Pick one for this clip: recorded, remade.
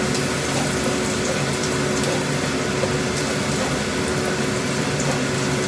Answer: recorded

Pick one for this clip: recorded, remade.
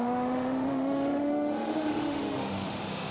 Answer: remade